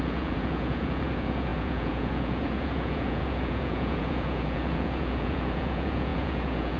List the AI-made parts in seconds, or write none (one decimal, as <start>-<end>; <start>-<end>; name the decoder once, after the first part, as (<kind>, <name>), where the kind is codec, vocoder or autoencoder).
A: 0.0-6.8 (vocoder, Vocos)